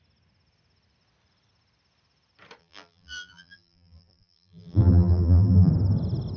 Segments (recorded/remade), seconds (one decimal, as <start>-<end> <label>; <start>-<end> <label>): 0.0-2.6 recorded; 2.6-5.7 remade; 5.7-6.4 recorded